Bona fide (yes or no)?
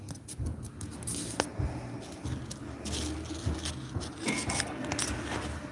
yes